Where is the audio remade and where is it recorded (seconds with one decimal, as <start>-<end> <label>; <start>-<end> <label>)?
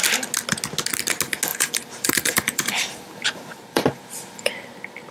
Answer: 0.0-1.5 recorded; 1.5-4.5 remade; 4.5-5.1 recorded